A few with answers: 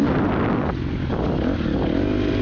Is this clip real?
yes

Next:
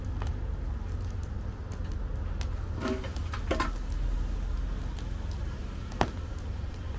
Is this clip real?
yes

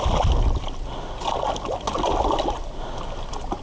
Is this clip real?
yes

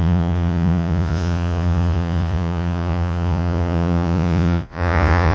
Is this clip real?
no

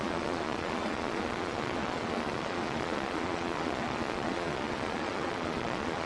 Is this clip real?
no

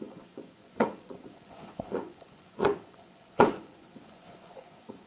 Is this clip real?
no